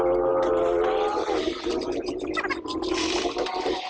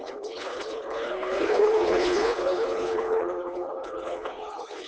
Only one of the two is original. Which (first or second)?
first